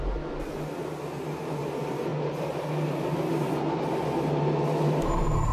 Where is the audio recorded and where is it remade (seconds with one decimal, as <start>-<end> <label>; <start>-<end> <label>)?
0.0-5.5 recorded